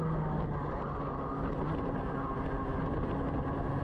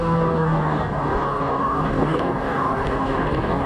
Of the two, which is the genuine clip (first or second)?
first